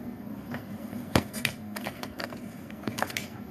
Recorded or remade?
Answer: remade